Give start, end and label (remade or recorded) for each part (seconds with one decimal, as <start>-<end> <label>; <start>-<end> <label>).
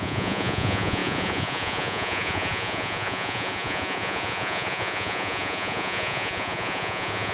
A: 0.0-7.3 remade